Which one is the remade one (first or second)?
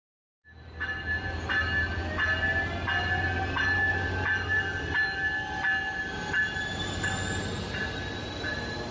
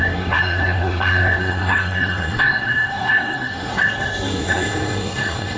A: second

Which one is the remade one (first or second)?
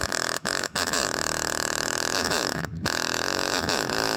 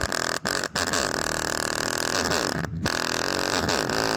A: first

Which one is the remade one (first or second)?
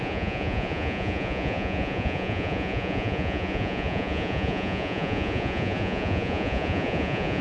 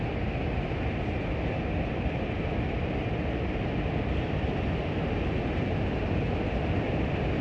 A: first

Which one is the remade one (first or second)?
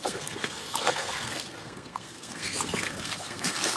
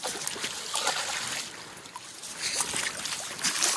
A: first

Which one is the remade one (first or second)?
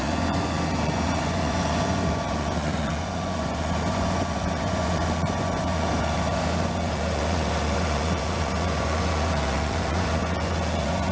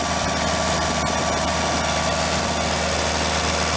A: first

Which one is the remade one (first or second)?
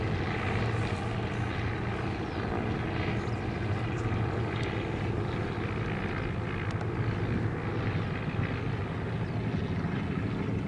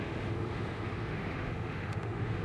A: second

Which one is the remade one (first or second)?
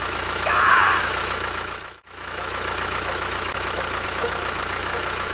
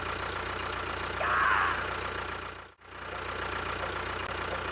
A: first